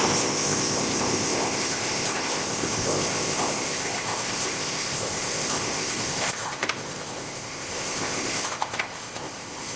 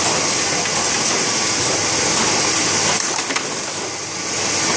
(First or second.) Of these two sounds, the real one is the second